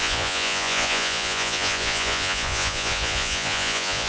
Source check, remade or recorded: remade